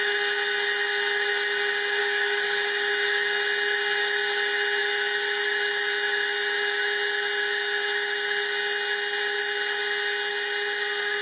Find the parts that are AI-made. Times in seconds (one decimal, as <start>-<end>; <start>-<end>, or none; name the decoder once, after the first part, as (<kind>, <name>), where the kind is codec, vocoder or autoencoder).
2.0-2.9 (autoencoder, DAC-VAE)